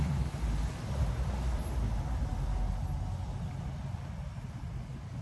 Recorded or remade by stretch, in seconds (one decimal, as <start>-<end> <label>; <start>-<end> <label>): 0.0-5.2 recorded